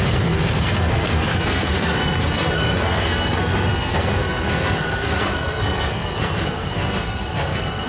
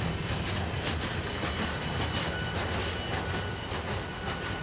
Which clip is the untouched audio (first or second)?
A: second